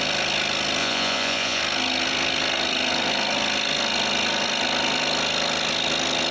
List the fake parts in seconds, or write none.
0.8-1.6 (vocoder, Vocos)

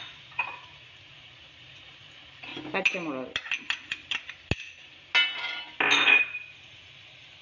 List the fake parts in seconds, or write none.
0.0-2.5 (vocoder, Vocos); 6.2-7.4

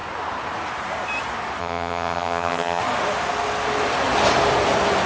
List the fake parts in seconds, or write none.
1.6-2.8 (vocoder, HiFi-GAN)

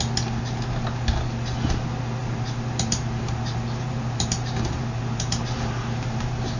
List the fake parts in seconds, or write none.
2.2-6.6 (vocoder, BigVGAN v2)

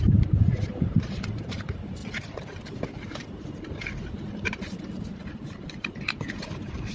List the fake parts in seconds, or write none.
0.0-2.0 (vocoder, BigVGAN v2); 4.3-6.9

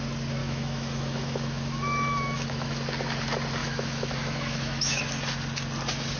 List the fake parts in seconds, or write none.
0.4-2.7 (autoencoder, DAC-VAE); 3.6-5.0